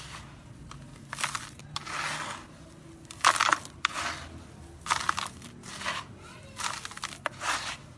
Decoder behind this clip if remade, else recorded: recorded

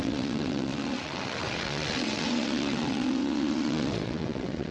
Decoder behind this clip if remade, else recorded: remade, vocoder, WaveNeXt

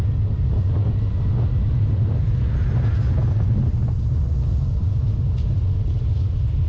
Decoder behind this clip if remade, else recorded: recorded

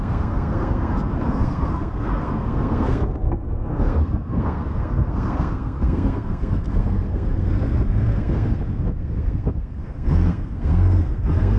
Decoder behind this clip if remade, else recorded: remade, codec, SNAC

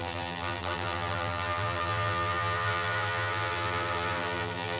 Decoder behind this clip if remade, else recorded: remade, vocoder, BigVGAN v2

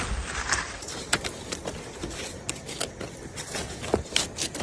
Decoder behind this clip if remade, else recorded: remade, vocoder, BigVGAN v2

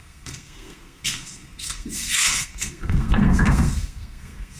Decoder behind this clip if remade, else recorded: remade, codec, SNAC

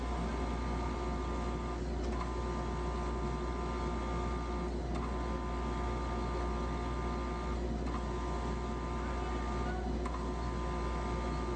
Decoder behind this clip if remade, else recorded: recorded